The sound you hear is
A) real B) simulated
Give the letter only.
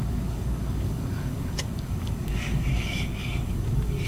B